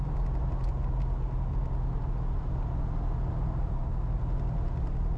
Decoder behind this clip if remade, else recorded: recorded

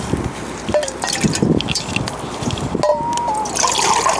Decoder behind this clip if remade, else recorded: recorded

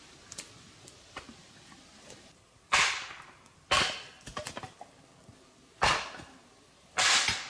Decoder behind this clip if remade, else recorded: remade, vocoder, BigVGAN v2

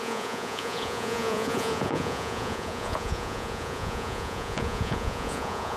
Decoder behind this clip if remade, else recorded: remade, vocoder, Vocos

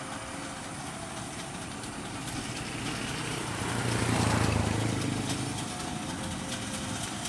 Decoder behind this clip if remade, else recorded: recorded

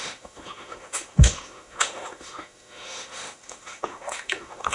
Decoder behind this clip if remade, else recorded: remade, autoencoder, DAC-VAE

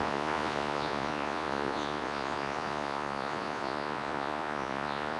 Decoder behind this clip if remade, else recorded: remade, vocoder, Vocos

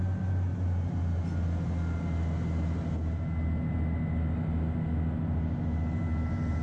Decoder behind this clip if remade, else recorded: recorded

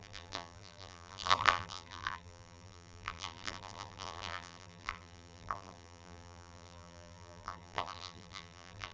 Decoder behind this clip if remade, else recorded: remade, vocoder, BigVGAN v2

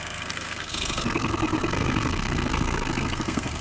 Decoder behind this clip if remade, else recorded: remade, codec, SNAC